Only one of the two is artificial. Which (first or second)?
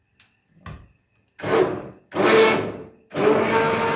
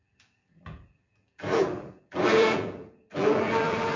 second